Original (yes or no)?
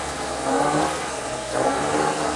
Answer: no